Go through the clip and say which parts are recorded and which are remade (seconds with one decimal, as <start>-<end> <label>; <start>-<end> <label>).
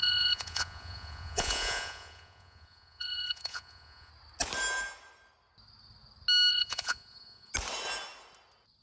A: 0.0-4.1 remade; 4.1-6.5 recorded; 6.5-7.5 remade; 7.5-8.8 recorded